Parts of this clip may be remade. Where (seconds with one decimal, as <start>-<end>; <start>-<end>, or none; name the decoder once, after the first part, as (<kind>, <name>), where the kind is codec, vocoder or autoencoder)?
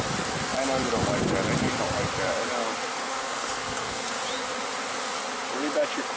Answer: 2.9-4.1 (codec, SNAC)